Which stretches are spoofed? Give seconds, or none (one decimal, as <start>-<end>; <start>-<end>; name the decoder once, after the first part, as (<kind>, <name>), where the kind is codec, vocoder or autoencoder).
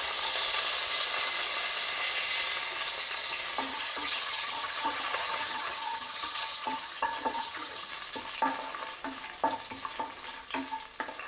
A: 3.7-7.9 (vocoder, HiFi-GAN)